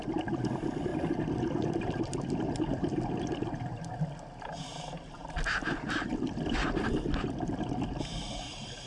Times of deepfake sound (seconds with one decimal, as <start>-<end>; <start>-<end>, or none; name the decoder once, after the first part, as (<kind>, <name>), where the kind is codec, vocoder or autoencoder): none